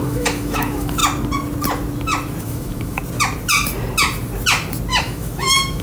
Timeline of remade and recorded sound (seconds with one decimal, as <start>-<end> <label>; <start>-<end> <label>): 0.0-1.0 remade; 1.0-2.4 recorded; 2.4-3.0 remade; 3.0-5.0 recorded; 5.0-5.8 remade